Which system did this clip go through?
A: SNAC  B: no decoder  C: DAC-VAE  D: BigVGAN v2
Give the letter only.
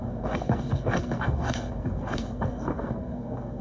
A